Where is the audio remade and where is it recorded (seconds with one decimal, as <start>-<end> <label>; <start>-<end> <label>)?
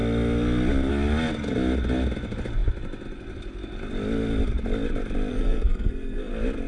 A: 0.0-5.3 recorded; 5.3-6.3 remade; 6.3-6.7 recorded